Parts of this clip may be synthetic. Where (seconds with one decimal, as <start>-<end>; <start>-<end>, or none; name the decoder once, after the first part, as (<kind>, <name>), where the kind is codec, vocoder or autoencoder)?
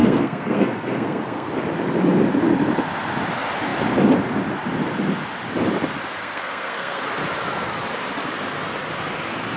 0.0-1.5 (codec, SNAC); 6.2-7.0